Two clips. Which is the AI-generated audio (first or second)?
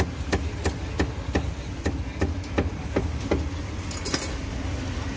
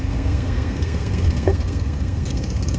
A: second